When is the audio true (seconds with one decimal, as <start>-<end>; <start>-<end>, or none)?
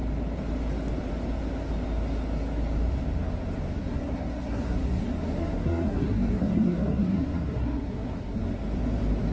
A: 0.0-3.8; 8.4-9.3